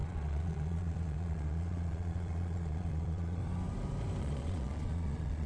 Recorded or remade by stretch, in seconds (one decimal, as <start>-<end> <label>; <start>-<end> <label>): 0.0-3.4 remade; 3.4-4.2 recorded; 4.2-5.5 remade